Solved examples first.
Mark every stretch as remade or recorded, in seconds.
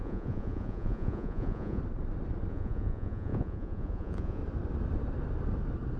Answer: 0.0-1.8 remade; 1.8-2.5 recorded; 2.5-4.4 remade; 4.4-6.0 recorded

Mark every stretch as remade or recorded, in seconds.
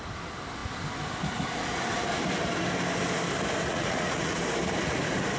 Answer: 0.0-3.7 recorded; 3.7-4.4 remade; 4.4-5.4 recorded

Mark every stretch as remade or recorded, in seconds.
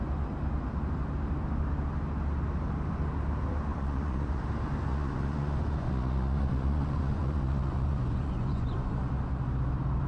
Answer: 0.0-3.7 recorded; 3.7-4.4 remade; 4.4-4.9 recorded; 4.9-8.9 remade; 8.9-10.1 recorded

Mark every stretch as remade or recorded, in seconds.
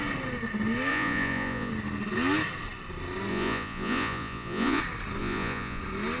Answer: 0.0-0.9 recorded; 0.9-1.7 remade; 1.7-3.3 recorded; 3.3-4.8 remade; 4.8-5.2 recorded; 5.2-5.8 remade; 5.8-6.2 recorded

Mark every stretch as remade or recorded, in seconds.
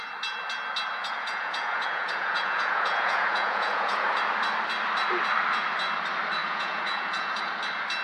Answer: 0.0-1.0 recorded; 1.0-4.2 remade; 4.2-6.4 recorded; 6.4-7.4 remade; 7.4-8.0 recorded